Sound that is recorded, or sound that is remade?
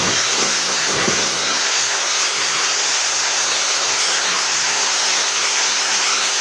remade